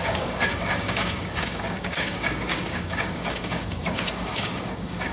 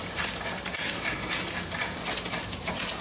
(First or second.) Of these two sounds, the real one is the second